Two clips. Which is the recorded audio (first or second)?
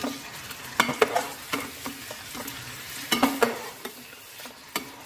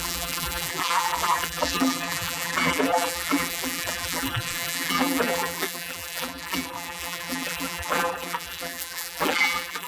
first